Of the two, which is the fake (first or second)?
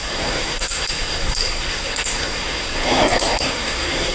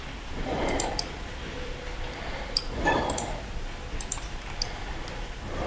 first